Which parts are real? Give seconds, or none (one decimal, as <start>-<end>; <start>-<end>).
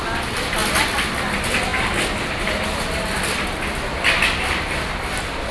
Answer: 0.0-1.7; 3.2-5.5